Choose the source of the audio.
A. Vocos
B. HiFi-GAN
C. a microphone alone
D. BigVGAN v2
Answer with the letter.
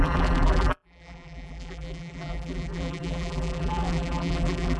D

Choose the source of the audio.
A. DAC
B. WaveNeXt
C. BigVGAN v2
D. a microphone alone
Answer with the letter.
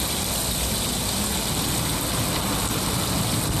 D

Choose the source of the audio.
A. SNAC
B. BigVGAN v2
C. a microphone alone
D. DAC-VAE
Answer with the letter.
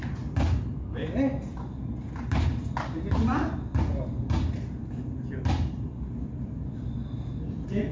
C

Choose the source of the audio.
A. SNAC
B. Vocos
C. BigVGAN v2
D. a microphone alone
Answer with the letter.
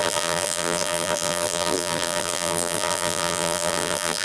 C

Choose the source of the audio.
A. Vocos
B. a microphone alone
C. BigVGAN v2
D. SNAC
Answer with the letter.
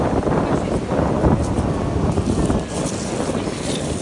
C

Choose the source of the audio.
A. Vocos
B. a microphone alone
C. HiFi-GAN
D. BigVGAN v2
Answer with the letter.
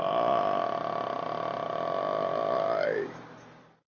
B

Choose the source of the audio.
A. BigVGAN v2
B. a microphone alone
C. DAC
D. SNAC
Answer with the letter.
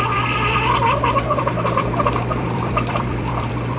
A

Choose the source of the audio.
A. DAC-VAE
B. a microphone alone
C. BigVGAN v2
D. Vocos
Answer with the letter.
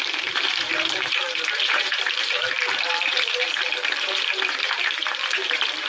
C